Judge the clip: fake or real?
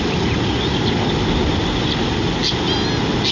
real